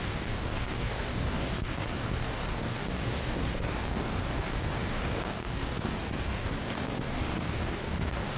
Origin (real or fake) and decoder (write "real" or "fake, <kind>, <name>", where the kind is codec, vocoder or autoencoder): fake, codec, DAC